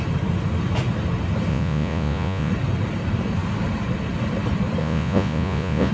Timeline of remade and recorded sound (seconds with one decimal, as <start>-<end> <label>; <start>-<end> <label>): 0.0-1.5 recorded; 1.5-2.5 remade; 2.5-4.8 recorded; 4.8-5.9 remade